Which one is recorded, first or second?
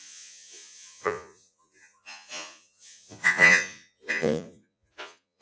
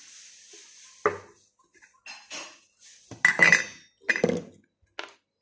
second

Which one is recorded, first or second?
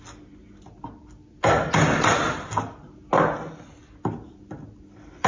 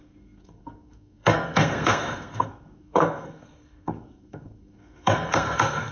first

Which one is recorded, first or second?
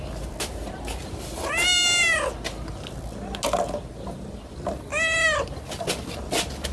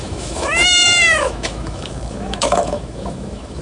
first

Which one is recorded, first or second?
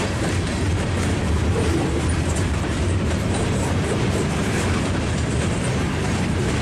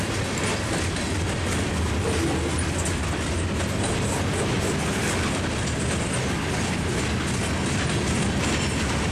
second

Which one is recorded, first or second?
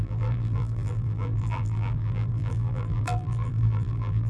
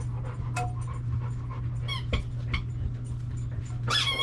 second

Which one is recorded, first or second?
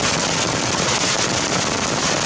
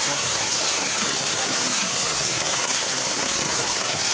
first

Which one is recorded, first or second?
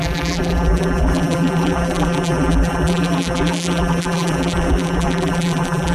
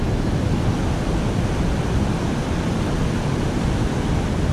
second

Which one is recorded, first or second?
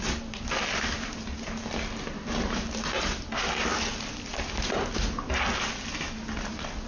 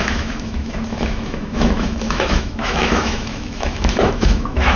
first